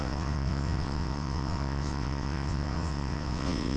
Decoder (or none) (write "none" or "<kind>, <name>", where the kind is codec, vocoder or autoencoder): vocoder, WaveNeXt